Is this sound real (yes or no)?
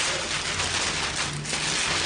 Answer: yes